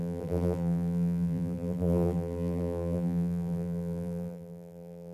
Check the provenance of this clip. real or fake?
fake